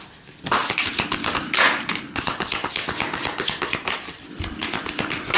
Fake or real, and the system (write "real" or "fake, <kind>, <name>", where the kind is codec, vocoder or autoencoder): real